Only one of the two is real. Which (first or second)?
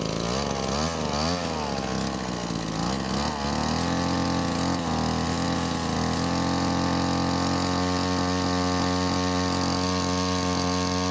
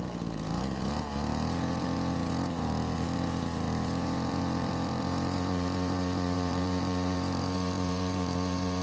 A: first